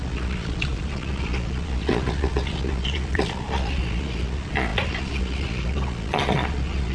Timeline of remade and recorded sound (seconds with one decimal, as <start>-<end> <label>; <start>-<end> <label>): 0.0-6.9 remade